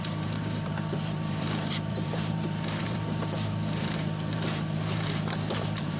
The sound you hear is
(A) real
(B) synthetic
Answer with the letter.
B